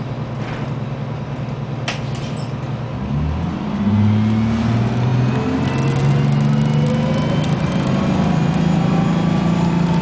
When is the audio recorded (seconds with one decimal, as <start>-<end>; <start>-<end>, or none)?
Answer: 0.0-10.0